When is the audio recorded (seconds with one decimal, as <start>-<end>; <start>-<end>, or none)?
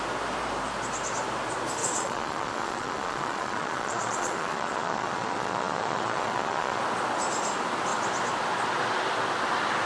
0.0-1.8; 6.8-9.9